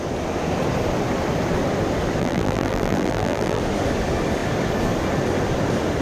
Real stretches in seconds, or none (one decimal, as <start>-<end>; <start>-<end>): 0.0-2.2; 3.6-6.0